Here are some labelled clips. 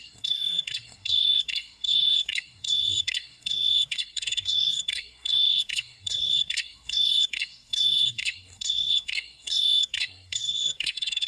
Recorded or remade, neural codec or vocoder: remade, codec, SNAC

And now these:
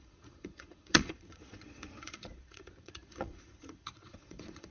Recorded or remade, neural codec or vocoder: remade, vocoder, Vocos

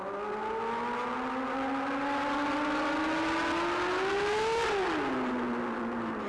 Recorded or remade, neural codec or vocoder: recorded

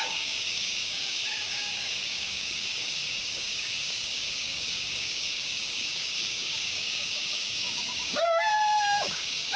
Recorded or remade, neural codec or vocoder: remade, codec, DAC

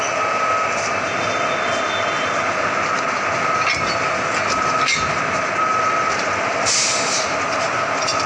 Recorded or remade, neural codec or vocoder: recorded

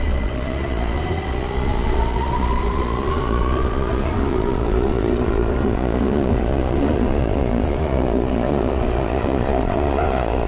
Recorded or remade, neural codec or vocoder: remade, vocoder, Vocos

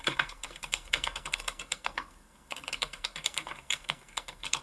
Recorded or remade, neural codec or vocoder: remade, codec, SNAC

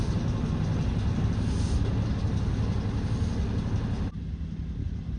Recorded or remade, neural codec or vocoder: recorded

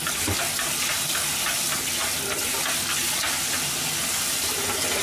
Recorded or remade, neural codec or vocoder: recorded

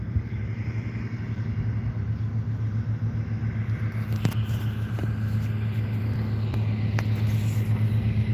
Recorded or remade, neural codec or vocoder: recorded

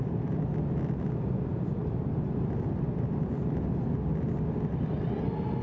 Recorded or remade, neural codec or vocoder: recorded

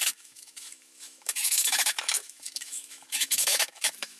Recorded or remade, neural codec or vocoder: remade, autoencoder, DAC-VAE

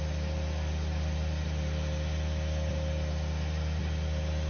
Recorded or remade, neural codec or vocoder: recorded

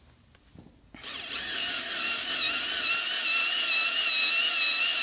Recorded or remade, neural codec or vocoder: recorded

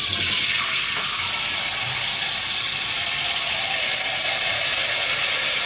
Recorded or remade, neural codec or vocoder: recorded